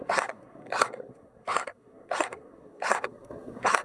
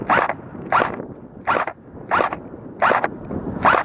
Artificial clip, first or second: first